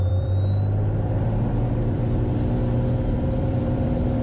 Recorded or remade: remade